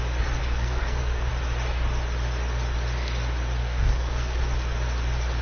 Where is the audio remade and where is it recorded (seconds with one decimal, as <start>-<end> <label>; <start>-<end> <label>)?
0.0-0.4 recorded; 0.4-1.3 remade; 1.3-3.6 recorded; 3.6-4.4 remade; 4.4-5.4 recorded